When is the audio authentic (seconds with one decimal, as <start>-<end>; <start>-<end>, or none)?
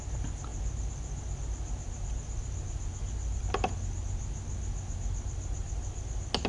0.0-6.5